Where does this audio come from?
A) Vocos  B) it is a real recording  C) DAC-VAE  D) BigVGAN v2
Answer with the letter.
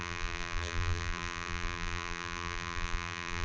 D